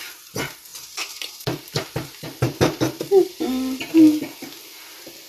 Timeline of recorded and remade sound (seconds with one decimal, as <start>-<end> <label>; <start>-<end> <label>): 0.0-0.7 recorded; 0.7-3.9 remade; 3.9-5.3 recorded